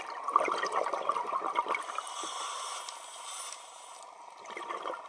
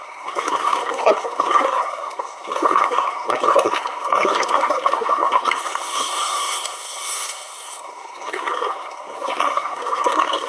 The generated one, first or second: second